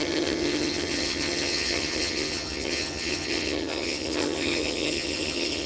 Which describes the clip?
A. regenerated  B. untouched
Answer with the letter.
A